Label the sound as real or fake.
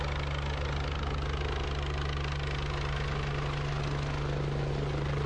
real